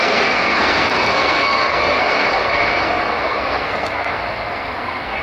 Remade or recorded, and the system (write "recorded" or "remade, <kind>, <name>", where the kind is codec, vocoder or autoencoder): remade, codec, SNAC